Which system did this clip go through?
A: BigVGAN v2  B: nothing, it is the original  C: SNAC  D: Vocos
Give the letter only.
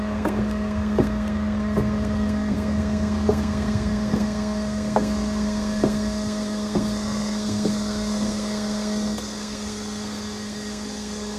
C